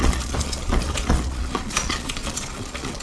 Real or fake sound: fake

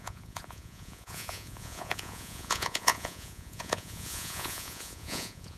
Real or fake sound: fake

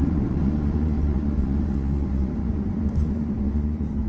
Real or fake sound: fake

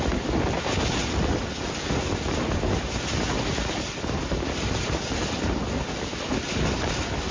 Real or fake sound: real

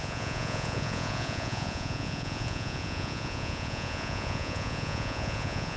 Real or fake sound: fake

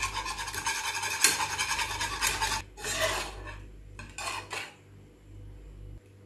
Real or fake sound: real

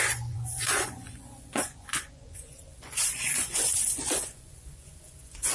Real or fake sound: fake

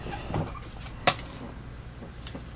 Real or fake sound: real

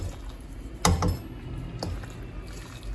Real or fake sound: real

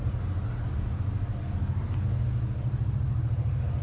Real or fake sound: real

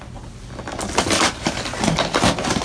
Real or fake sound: real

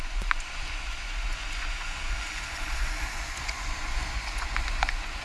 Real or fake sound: fake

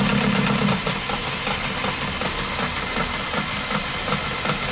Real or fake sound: real